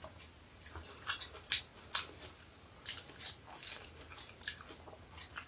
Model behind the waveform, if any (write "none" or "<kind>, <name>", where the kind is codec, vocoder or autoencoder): none